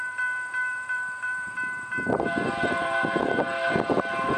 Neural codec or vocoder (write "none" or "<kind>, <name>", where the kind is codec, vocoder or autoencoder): vocoder, BigVGAN v2